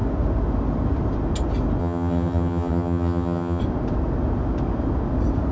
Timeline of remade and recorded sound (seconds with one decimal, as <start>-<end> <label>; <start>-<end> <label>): 0.0-1.8 recorded; 1.8-3.6 remade; 3.6-5.5 recorded